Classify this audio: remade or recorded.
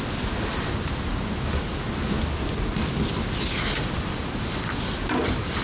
recorded